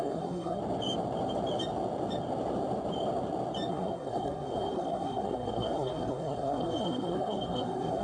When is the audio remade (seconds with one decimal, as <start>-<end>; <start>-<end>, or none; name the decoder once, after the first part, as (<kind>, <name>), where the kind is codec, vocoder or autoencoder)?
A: 0.0-0.6 (codec, SNAC); 3.7-8.0